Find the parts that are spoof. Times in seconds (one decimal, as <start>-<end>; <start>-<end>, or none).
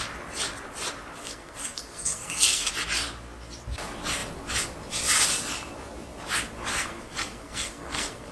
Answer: 1.2-2.7; 6.8-8.3